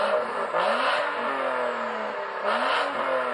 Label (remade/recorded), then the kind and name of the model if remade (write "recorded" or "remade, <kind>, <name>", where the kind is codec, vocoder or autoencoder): recorded